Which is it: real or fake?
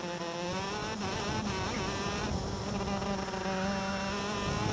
real